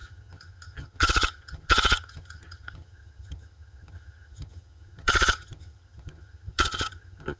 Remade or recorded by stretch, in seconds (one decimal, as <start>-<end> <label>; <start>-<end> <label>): 0.0-7.4 remade